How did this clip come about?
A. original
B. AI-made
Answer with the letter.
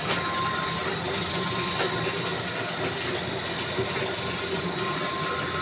A